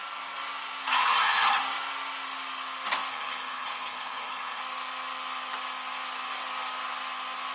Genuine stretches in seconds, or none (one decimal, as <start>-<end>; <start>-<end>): 0.0-3.1; 4.6-7.5